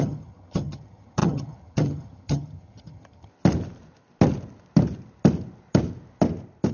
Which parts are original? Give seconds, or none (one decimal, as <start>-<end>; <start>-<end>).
3.3-6.7